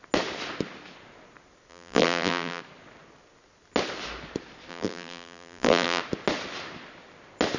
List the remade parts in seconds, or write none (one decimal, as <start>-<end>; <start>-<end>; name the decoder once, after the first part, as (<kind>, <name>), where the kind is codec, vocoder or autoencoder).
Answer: 1.7-2.6 (vocoder, BigVGAN v2); 4.7-6.0